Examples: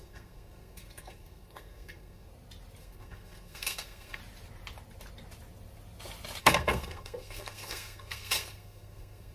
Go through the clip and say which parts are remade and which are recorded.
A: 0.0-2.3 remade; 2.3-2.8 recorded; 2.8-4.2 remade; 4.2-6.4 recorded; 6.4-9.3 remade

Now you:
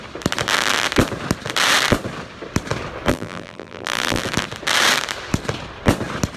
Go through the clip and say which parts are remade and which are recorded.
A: 0.0-3.1 recorded; 3.1-4.2 remade; 4.2-6.4 recorded